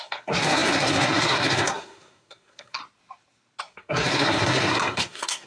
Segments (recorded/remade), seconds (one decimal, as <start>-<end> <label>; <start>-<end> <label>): 0.0-2.8 remade; 2.8-3.6 recorded; 3.6-5.5 remade

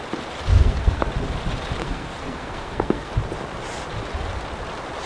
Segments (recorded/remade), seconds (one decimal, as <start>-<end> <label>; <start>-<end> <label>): 0.0-0.5 recorded; 0.5-1.1 remade; 1.1-1.8 recorded; 1.8-3.1 remade; 3.1-5.1 recorded